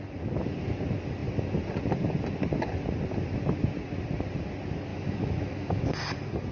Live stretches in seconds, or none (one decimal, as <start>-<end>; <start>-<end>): 0.0-4.9; 5.9-6.5